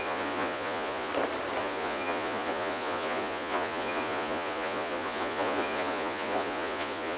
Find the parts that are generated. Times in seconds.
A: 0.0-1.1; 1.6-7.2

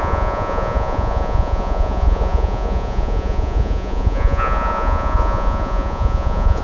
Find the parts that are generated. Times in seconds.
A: 0.0-6.6

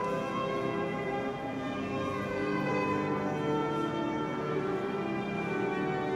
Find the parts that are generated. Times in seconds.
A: 0.0-2.7; 3.6-4.5

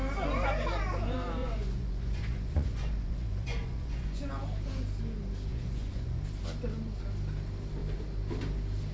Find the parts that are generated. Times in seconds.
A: 1.4-4.3; 5.5-6.2

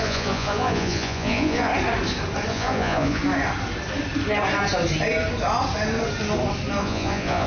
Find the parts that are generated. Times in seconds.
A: 0.0-1.7; 2.5-3.2; 6.8-7.5

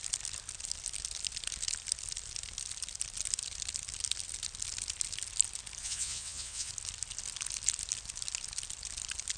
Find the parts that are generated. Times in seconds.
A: 5.8-6.7